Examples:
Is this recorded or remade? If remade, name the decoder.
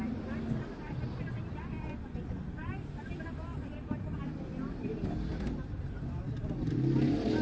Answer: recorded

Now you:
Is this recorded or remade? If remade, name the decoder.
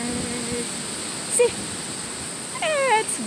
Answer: recorded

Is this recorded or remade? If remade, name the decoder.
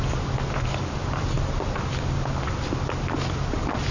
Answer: recorded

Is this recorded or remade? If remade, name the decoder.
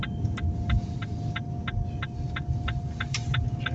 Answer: recorded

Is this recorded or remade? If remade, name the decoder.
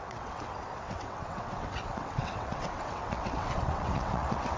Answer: remade, vocoder, WaveNeXt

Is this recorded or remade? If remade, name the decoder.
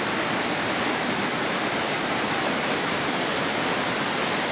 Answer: recorded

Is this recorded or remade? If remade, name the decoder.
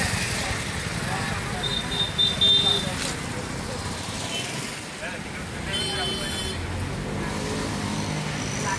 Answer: recorded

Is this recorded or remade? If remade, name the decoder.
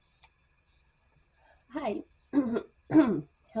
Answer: recorded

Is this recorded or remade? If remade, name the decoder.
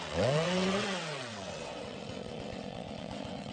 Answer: remade, vocoder, WaveNeXt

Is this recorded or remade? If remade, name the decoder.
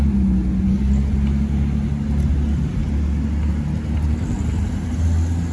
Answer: recorded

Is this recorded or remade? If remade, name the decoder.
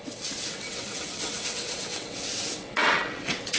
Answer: remade, vocoder, WaveNeXt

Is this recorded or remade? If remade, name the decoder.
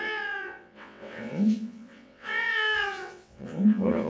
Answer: remade, vocoder, WaveNeXt